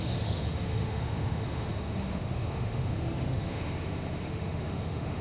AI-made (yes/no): yes